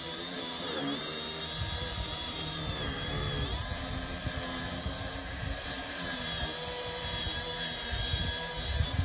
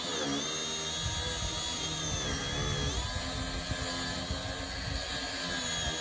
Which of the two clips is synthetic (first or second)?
first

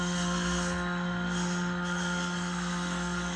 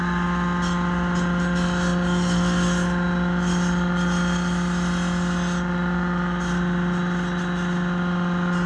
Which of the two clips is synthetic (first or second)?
first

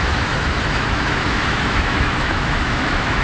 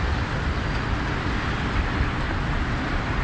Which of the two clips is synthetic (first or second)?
first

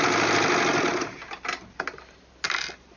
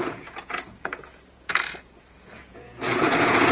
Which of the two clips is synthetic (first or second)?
second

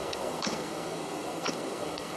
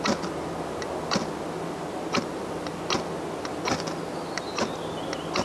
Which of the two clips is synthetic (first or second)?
first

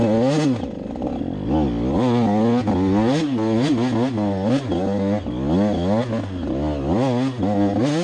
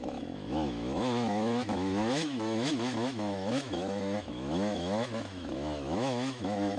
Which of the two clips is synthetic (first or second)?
second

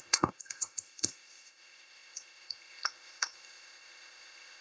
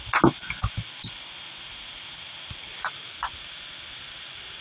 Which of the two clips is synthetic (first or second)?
first